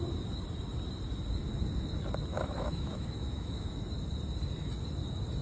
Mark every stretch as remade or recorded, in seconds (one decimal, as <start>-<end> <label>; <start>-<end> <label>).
0.0-2.3 recorded; 2.3-3.8 remade; 3.8-5.4 recorded